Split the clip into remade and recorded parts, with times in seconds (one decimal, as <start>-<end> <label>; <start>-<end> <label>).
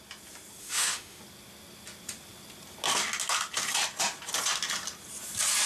0.0-0.6 recorded; 0.6-1.2 remade; 1.2-5.7 recorded